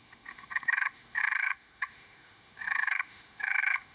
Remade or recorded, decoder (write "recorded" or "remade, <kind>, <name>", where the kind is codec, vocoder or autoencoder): remade, autoencoder, DAC-VAE